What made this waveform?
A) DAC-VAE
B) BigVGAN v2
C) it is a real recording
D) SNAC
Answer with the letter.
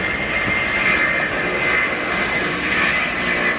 C